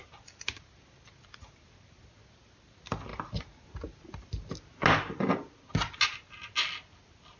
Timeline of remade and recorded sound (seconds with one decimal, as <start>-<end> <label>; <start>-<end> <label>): 0.0-7.4 recorded